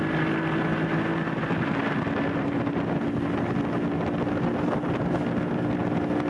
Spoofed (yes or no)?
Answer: no